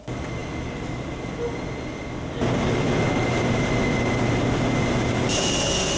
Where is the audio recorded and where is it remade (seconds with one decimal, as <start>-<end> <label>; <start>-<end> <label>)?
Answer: 0.0-6.0 recorded